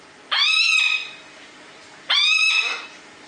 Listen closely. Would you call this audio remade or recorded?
recorded